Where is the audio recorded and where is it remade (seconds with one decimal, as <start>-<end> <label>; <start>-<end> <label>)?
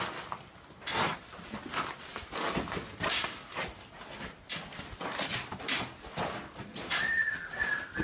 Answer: 0.0-6.7 recorded; 6.7-7.3 remade; 7.3-8.0 recorded